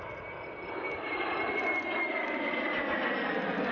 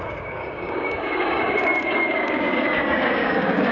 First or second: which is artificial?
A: second